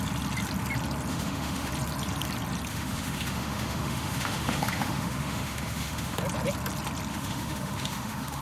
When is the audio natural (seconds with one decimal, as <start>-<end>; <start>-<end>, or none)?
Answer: 0.0-1.1; 1.7-2.7; 6.2-7.1